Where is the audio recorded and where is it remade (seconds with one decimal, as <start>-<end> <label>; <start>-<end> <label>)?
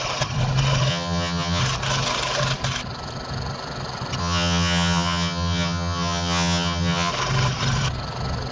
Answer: 0.0-0.9 recorded; 0.9-1.6 remade; 1.6-4.2 recorded; 4.2-7.1 remade; 7.1-8.5 recorded